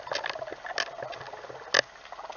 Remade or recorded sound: recorded